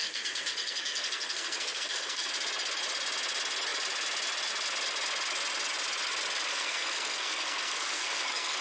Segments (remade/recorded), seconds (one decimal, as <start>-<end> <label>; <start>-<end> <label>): 0.0-2.3 remade; 2.3-6.5 recorded; 6.5-8.6 remade